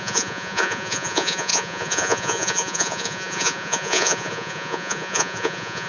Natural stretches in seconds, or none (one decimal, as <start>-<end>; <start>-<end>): none